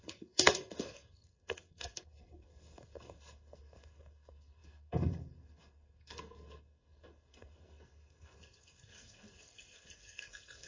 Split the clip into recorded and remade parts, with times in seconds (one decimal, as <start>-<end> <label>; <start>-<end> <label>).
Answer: 0.0-10.7 remade